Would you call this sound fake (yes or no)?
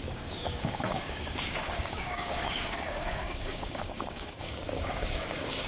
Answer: yes